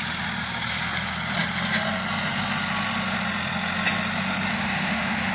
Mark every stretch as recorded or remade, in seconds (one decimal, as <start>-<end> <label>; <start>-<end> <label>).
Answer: 0.0-4.5 recorded; 4.5-5.3 remade